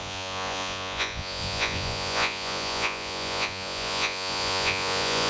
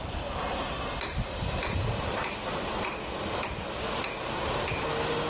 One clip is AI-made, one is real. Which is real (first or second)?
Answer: second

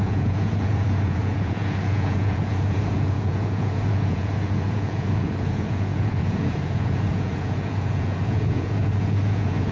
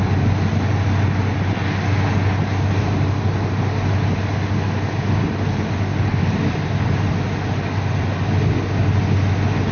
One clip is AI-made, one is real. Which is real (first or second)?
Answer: second